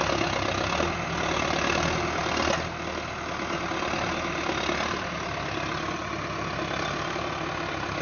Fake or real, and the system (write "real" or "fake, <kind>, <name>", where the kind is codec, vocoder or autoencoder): real